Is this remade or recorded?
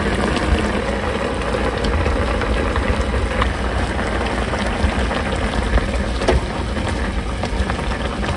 recorded